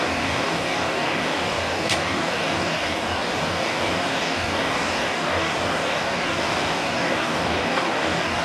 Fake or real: fake